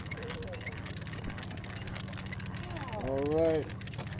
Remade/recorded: recorded